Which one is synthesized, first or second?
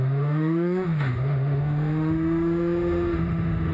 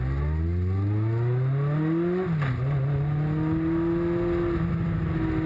first